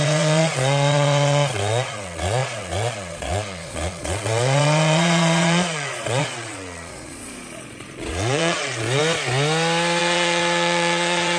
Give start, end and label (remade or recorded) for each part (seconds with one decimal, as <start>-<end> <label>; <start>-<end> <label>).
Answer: 0.0-9.0 remade; 9.0-10.0 recorded; 10.0-11.4 remade

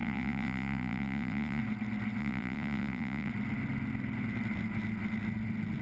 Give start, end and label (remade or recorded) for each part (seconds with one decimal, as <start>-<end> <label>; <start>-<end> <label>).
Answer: 0.0-1.6 remade; 1.6-2.2 recorded; 2.2-3.3 remade; 3.3-5.8 recorded

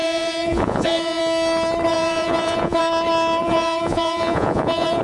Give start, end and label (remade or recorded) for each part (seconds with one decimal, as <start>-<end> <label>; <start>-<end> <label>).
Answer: 0.0-1.2 remade; 1.2-1.9 recorded; 1.9-2.8 remade; 2.8-3.4 recorded; 3.4-5.0 remade

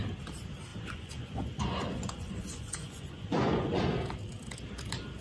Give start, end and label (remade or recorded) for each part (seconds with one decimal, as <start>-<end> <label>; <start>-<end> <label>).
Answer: 0.0-0.7 recorded; 0.7-3.8 remade; 3.8-5.2 recorded

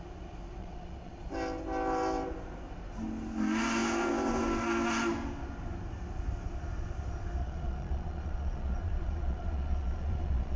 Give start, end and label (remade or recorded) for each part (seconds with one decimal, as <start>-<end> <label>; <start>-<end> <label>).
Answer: 0.0-0.6 recorded; 0.6-1.3 remade; 1.3-7.4 recorded; 7.4-10.6 remade

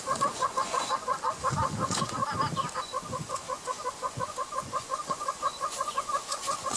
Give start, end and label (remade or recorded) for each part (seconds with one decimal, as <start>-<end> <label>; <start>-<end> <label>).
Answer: 0.0-2.2 remade; 2.2-2.8 recorded; 2.8-6.8 remade

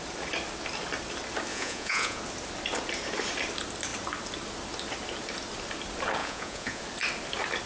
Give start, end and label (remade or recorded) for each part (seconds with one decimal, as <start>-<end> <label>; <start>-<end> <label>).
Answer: 0.0-1.5 recorded; 1.5-2.2 remade; 2.2-6.2 recorded; 6.2-6.8 remade; 6.8-7.7 recorded